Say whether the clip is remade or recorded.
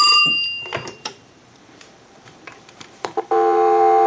remade